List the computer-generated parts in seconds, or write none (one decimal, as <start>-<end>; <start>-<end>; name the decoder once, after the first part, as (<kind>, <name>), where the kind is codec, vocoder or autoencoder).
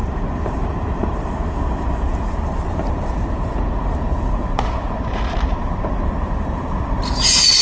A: 0.0-7.6 (vocoder, BigVGAN v2)